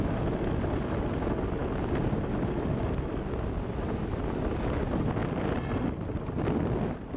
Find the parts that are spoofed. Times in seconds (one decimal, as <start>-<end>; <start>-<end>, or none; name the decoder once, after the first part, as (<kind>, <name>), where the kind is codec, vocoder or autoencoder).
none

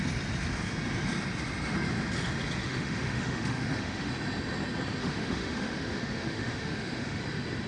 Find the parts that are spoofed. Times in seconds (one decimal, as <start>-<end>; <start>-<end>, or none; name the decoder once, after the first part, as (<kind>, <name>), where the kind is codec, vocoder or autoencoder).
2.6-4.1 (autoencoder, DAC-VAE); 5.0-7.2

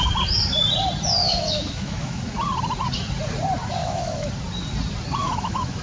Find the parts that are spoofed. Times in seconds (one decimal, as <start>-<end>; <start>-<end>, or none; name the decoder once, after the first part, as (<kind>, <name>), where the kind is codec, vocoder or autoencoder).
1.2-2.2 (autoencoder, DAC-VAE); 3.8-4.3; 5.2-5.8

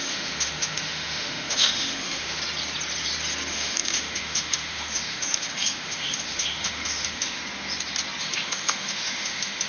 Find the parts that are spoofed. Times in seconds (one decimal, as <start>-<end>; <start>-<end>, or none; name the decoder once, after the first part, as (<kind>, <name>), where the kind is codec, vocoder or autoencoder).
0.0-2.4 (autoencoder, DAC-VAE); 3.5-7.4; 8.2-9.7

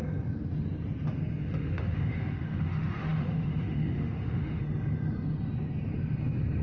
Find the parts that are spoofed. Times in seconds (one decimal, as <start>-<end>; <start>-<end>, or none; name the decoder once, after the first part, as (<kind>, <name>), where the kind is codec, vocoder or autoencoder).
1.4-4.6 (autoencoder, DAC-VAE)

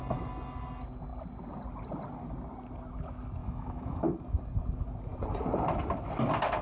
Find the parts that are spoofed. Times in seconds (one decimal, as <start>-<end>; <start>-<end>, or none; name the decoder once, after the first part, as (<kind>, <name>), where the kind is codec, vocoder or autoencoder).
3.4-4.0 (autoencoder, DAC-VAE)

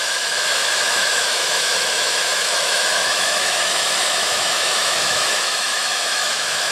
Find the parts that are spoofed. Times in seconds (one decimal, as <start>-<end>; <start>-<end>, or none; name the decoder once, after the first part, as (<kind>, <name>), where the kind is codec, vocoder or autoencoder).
0.0-6.7 (autoencoder, DAC-VAE)